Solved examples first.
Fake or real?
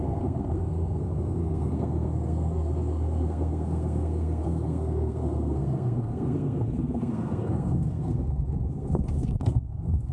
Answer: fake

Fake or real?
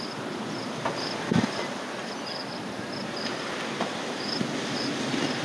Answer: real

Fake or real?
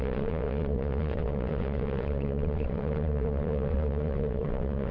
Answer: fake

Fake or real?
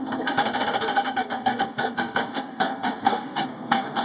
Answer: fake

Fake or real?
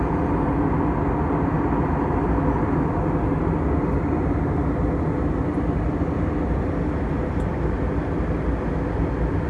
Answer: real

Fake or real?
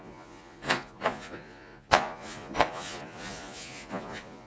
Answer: fake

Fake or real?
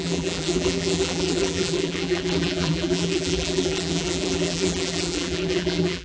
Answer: fake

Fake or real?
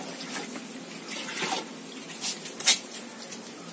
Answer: real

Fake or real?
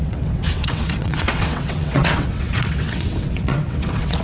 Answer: fake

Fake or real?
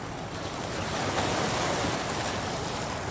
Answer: real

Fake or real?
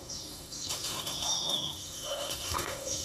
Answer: fake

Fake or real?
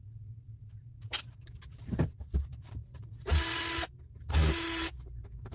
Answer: fake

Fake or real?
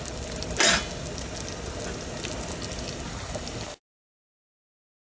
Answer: real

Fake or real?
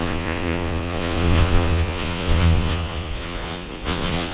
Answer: fake